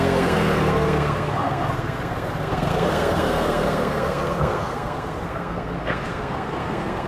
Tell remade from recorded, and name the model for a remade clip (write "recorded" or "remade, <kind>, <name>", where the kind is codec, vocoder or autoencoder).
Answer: remade, codec, SNAC